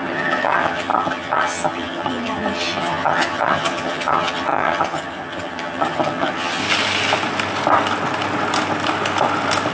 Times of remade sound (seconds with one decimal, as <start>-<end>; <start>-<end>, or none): 0.0-6.6

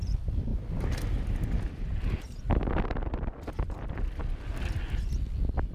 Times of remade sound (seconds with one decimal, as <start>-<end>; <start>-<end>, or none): none